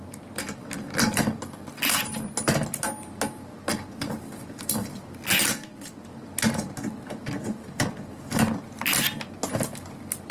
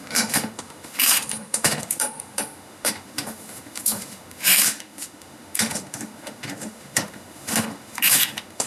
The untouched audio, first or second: first